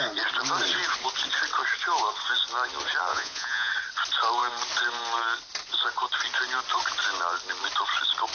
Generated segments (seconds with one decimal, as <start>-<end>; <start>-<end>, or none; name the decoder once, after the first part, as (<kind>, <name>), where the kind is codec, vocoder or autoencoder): 3.1-3.7 (vocoder, Vocos)